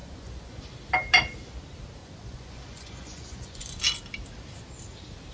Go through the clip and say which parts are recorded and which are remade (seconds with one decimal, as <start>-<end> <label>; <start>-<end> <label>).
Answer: 0.0-0.6 remade; 0.6-2.0 recorded; 2.0-3.8 remade; 3.8-5.3 recorded